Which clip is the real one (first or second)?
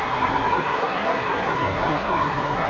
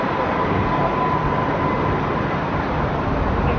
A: second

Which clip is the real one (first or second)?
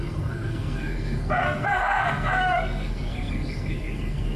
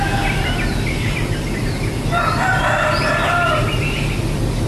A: second